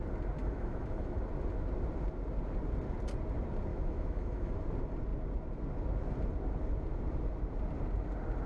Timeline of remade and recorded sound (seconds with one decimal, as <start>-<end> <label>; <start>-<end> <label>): 0.0-0.4 recorded; 0.4-1.2 remade; 1.2-3.7 recorded; 3.7-4.6 remade; 4.6-8.5 recorded